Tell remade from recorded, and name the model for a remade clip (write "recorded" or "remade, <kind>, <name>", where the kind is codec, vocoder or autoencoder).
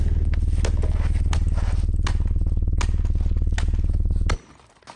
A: recorded